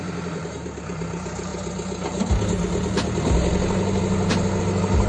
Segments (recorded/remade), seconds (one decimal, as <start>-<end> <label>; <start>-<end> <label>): 0.0-1.5 remade; 1.5-4.6 recorded; 4.6-5.1 remade